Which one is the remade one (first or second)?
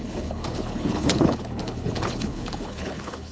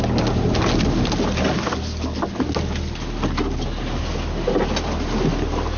first